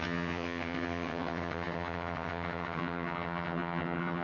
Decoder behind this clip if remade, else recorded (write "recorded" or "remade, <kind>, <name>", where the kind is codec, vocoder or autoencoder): remade, vocoder, HiFi-GAN